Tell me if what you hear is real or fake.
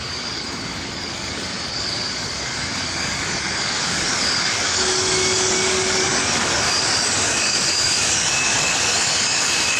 fake